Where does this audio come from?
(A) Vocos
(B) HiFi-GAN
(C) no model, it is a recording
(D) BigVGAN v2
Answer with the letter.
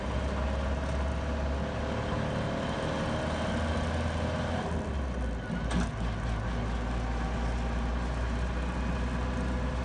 C